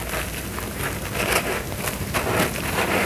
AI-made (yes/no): no